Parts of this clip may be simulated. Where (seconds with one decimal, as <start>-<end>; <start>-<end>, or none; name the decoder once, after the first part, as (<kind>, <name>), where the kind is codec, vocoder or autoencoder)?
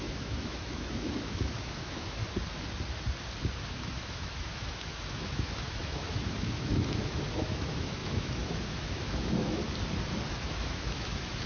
0.0-2.2 (autoencoder, DAC-VAE); 3.7-9.6; 10.3-11.5